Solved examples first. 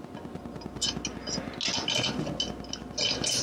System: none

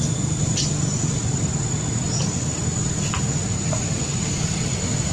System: none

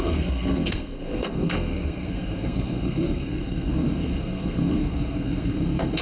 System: codec, SNAC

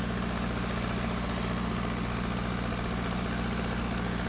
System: none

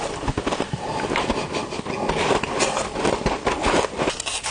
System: none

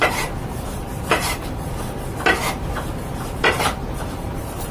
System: vocoder, BigVGAN v2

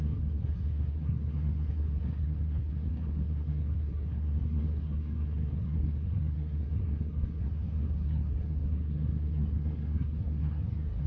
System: codec, SNAC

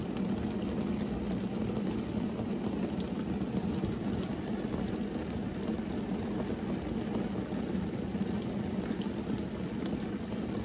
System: none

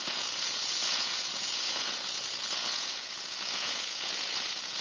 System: vocoder, Vocos